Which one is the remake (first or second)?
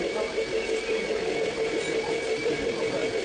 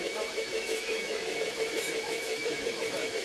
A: second